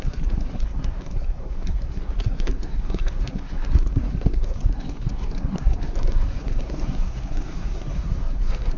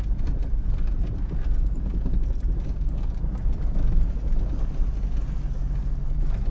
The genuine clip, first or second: second